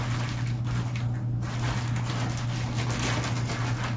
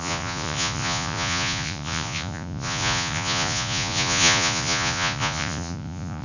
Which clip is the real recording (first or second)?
first